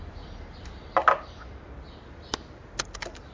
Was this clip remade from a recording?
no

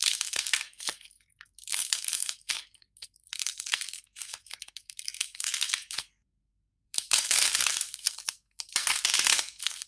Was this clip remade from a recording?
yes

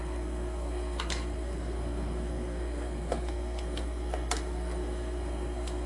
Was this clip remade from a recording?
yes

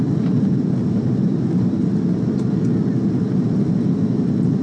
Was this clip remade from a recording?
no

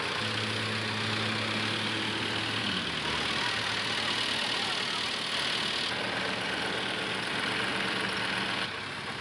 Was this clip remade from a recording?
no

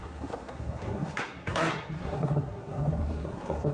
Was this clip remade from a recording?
yes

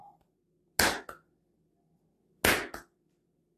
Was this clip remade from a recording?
no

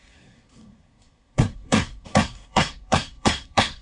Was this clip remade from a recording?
yes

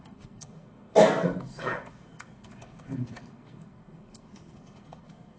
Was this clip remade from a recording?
yes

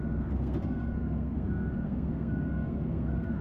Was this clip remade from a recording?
yes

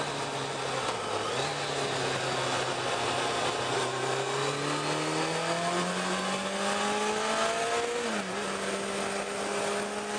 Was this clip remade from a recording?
no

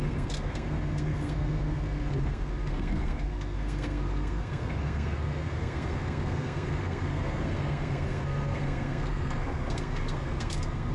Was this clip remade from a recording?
yes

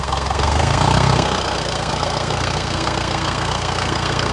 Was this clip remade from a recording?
yes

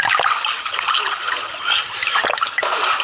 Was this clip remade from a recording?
no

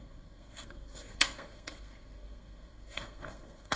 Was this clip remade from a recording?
yes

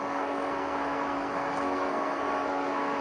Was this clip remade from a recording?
yes